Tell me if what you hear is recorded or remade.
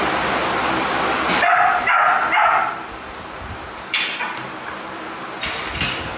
recorded